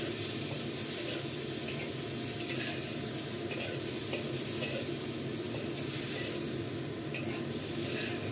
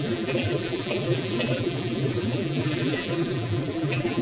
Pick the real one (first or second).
first